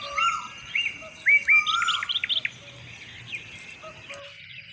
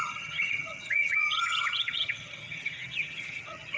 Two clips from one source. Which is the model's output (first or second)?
second